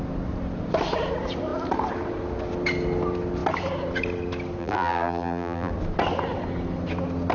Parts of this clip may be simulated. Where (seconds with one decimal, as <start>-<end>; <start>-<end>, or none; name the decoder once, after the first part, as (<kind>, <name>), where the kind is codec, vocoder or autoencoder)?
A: 4.6-5.7 (vocoder, BigVGAN v2)